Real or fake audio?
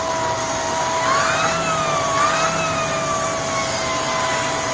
real